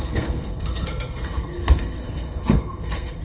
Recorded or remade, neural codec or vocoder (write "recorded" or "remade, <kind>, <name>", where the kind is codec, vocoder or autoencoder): remade, codec, SNAC